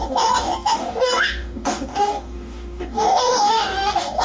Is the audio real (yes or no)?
no